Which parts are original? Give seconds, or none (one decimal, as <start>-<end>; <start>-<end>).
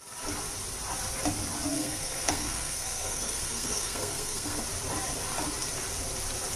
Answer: 0.0-1.7; 4.6-6.6